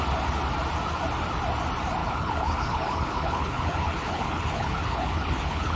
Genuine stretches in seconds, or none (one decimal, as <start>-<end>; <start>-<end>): 0.0-2.0